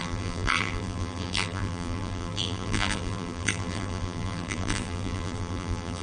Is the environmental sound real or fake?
fake